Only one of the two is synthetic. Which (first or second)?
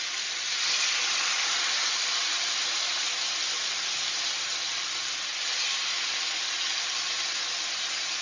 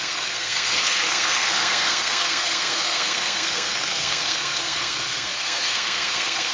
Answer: second